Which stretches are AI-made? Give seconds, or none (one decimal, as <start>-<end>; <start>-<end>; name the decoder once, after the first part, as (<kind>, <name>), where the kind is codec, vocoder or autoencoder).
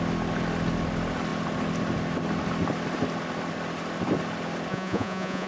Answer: 4.7-5.5 (vocoder, Vocos)